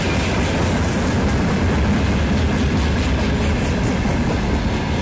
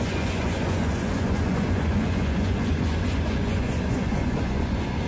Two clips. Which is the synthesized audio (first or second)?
second